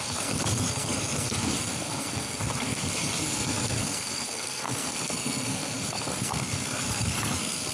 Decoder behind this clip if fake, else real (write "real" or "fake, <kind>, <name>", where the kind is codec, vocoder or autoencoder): fake, codec, SNAC